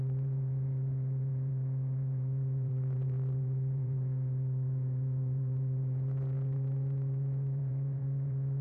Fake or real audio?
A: fake